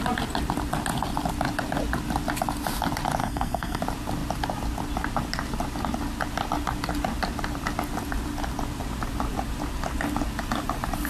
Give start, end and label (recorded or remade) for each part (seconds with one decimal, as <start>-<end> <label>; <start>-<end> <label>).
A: 0.0-3.2 recorded; 3.2-3.8 remade; 3.8-11.1 recorded